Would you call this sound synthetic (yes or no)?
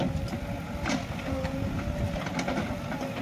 no